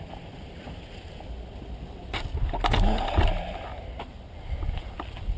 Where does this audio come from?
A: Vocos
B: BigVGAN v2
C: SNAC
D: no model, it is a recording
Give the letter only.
D